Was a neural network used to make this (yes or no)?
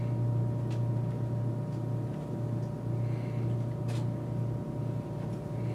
no